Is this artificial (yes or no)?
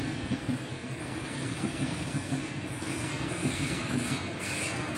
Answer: yes